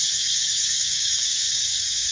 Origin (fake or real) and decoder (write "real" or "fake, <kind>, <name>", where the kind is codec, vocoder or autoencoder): fake, codec, DAC